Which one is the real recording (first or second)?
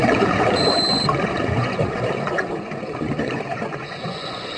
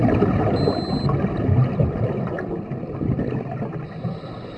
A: second